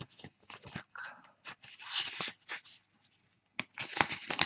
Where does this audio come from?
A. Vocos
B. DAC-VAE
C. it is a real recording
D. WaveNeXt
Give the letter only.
C